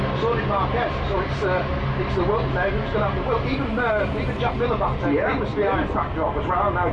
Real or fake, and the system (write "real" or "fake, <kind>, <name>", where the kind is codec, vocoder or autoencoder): real